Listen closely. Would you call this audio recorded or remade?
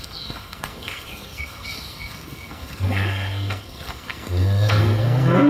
remade